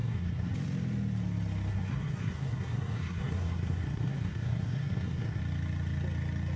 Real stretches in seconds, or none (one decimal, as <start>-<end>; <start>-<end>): 0.5-1.7; 5.4-6.6